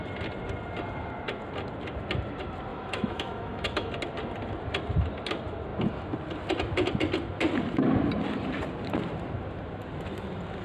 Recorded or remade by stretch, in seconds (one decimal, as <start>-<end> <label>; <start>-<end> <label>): 0.0-2.7 recorded; 2.7-3.9 remade; 3.9-10.6 recorded